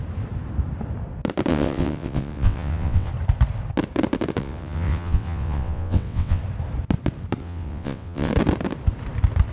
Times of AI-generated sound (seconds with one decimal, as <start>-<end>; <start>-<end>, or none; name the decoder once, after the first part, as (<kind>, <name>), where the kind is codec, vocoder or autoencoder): 1.5-3.1 (vocoder, WaveNeXt); 4.4-6.4; 7.4-8.3